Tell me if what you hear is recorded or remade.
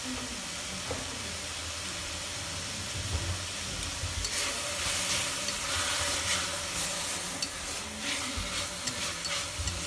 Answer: recorded